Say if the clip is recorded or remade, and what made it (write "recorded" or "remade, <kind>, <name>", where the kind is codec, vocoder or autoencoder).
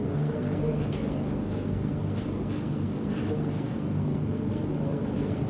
remade, codec, SNAC